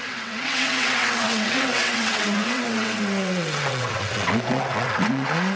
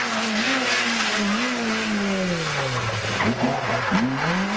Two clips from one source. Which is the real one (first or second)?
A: second